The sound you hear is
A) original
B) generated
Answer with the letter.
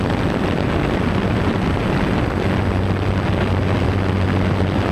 A